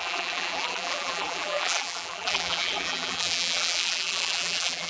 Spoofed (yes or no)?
yes